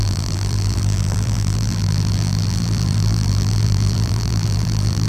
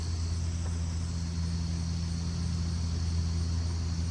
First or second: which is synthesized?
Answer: first